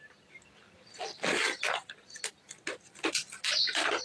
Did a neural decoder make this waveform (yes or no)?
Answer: no